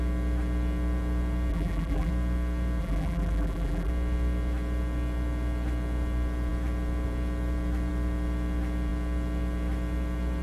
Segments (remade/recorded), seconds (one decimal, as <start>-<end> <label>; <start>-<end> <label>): 0.0-1.5 recorded; 1.5-2.1 remade; 2.1-2.8 recorded; 2.8-3.9 remade; 3.9-10.4 recorded